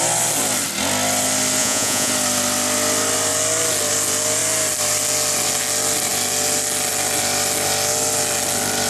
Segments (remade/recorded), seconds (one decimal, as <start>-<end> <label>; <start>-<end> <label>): 0.0-1.6 recorded; 1.6-2.1 remade; 2.1-8.9 recorded